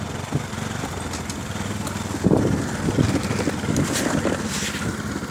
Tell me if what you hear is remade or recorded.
recorded